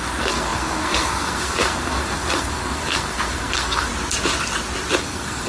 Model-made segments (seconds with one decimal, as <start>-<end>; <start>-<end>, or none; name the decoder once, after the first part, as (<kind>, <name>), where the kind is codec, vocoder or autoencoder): 0.0-3.9 (codec, SNAC); 5.0-5.5

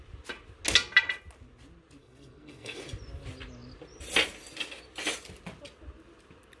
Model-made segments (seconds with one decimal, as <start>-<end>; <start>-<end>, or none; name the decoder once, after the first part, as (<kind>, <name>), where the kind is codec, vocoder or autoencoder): 2.0-2.8 (codec, SNAC)

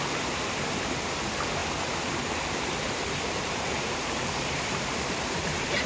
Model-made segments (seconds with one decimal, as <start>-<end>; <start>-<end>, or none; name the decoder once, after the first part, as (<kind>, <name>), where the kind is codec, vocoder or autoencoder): none

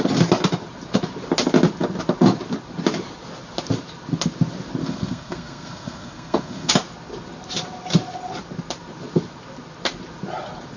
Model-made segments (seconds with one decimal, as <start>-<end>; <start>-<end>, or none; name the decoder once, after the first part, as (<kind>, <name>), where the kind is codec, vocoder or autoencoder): 4.8-6.7 (codec, SNAC)

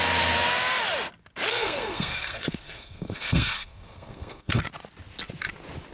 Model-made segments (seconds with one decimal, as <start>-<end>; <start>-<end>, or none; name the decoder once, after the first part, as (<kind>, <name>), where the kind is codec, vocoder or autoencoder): 1.5-4.6 (codec, SNAC)

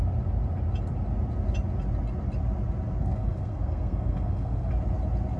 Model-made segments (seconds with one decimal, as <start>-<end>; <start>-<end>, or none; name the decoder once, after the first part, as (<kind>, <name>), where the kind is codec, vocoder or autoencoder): 3.0-4.7 (codec, SNAC)

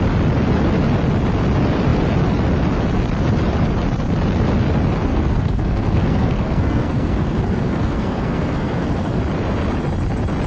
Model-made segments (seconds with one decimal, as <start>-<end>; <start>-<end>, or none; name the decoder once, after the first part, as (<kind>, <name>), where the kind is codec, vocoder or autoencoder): 5.1-9.2 (codec, SNAC)